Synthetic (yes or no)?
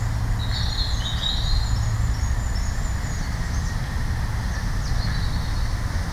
no